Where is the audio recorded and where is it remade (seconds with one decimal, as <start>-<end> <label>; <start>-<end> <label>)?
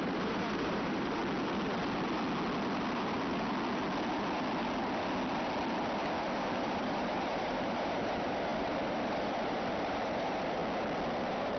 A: 0.0-1.2 remade; 1.2-6.2 recorded; 6.2-10.6 remade; 10.6-11.2 recorded; 11.2-11.6 remade